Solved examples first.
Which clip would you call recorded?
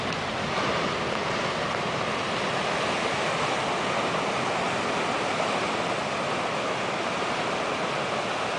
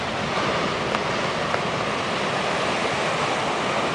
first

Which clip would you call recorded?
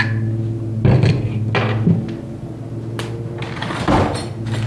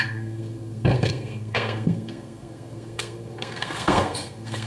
first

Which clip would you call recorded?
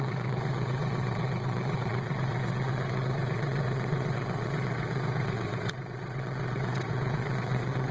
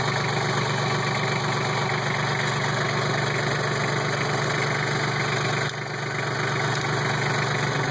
second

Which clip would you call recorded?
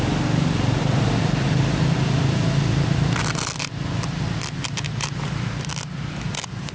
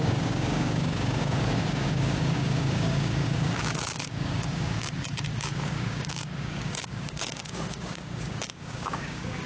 first